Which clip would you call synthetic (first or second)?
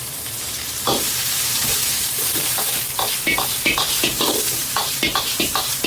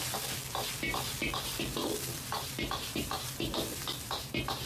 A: first